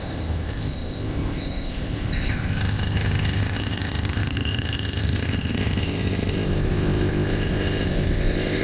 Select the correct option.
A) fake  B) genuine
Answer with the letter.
A